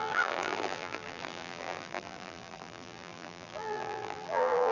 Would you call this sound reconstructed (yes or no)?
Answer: yes